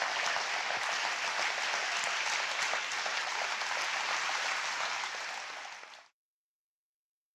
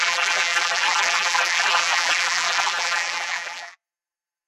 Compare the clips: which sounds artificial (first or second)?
second